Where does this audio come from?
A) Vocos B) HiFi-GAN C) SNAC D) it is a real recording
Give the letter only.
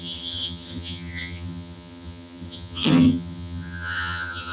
B